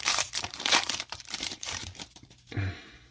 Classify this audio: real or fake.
fake